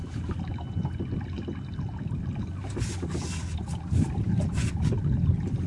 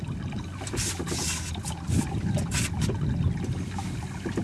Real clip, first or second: second